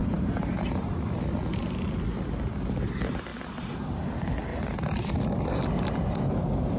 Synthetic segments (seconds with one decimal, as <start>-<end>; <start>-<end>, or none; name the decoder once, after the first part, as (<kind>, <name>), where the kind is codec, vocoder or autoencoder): 0.0-0.9 (vocoder, BigVGAN v2); 4.5-5.2